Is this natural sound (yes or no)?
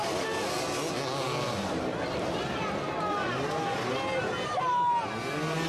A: yes